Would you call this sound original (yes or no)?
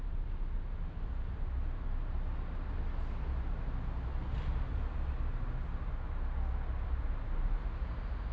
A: yes